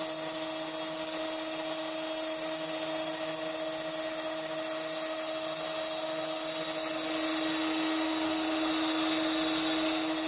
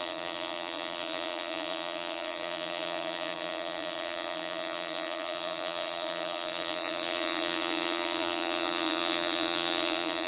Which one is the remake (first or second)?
second